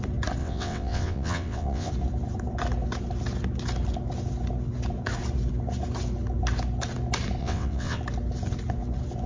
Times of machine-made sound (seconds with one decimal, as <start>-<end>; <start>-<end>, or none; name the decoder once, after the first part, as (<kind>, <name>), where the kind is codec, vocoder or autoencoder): 0.4-1.9 (vocoder, WaveNeXt); 7.4-8.0